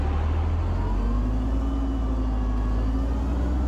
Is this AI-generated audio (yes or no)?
no